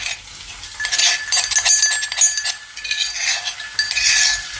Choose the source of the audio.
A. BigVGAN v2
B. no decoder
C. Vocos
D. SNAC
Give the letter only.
B